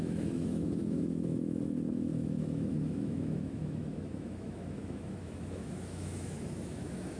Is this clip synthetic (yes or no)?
yes